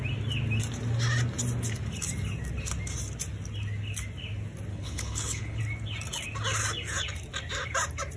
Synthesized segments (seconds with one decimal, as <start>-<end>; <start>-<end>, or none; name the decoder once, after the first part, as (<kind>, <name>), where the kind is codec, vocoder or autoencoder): 4.7-5.6 (codec, HILCodec)